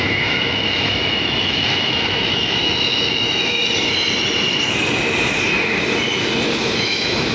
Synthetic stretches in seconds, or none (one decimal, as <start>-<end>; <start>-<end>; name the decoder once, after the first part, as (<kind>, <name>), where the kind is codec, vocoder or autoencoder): 0.0-3.6 (autoencoder, DAC-VAE); 6.6-7.3